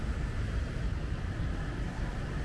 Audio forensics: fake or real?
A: fake